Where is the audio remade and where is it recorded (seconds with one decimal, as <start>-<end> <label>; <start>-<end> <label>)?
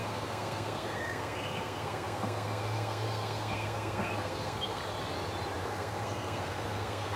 0.0-4.8 remade; 4.8-5.6 recorded; 5.6-7.2 remade